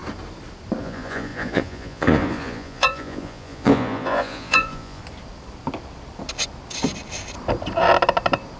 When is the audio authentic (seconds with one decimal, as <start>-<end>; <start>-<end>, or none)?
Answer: 0.0-0.8; 5.0-8.6